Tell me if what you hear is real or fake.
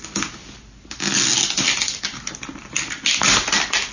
real